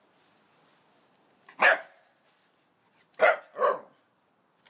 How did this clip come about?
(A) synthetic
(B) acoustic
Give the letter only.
B